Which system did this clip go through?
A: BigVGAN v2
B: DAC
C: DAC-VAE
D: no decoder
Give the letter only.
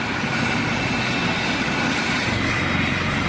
D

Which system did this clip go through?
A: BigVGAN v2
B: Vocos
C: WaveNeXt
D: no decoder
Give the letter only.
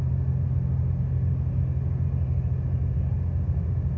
D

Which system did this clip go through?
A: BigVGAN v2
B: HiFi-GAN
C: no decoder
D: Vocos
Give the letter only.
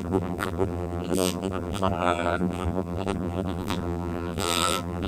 A